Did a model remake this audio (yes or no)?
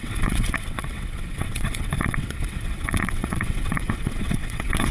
yes